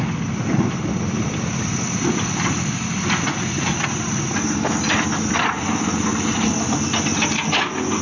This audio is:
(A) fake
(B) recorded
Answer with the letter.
B